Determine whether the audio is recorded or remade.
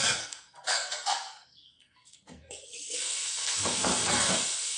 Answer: remade